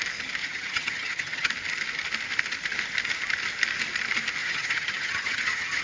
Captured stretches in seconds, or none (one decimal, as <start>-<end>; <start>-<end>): 0.0-0.4; 1.5-4.4